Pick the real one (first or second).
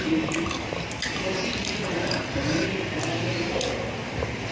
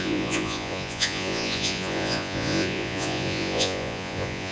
first